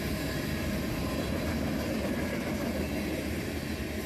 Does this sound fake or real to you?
real